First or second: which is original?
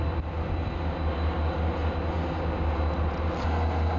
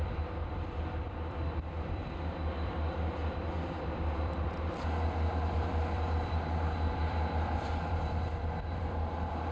first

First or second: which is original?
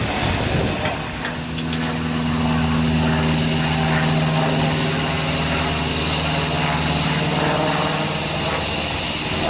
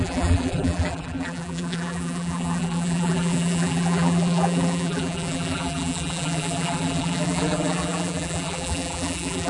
first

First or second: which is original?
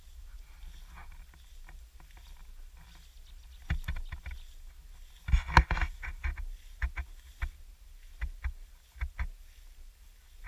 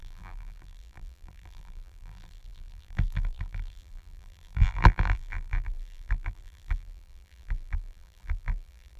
first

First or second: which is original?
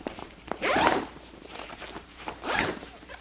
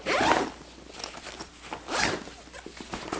second